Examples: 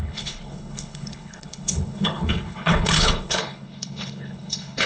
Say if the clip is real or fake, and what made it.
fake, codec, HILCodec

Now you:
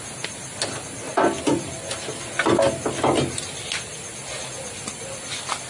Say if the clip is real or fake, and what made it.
real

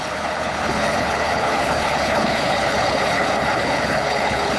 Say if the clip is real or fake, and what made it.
fake, codec, HILCodec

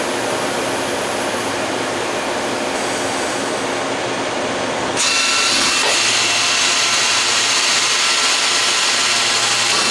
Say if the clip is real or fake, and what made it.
real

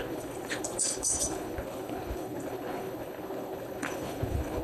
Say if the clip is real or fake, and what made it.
fake, codec, HILCodec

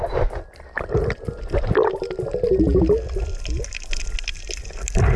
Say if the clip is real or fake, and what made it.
real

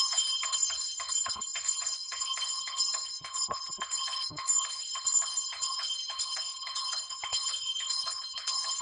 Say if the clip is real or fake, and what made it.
fake, codec, HILCodec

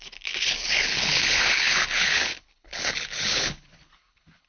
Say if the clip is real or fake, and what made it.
fake, codec, HILCodec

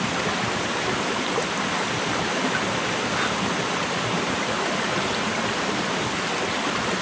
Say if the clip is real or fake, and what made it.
real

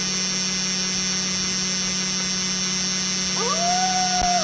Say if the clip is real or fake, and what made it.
real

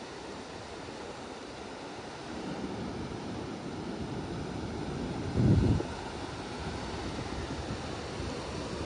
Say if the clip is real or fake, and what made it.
real